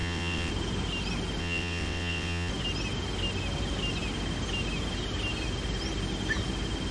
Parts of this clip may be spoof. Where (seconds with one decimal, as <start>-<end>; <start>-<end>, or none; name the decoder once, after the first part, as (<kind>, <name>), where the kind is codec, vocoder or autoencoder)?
0.0-0.5 (vocoder, WaveNeXt); 1.4-2.5